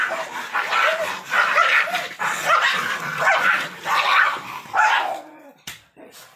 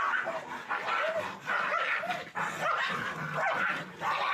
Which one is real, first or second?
second